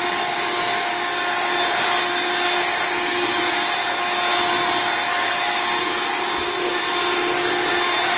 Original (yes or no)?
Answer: yes